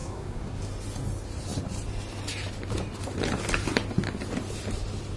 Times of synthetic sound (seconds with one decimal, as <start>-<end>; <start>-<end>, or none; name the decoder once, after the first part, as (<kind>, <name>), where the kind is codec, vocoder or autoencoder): 0.0-0.6 (codec, SNAC)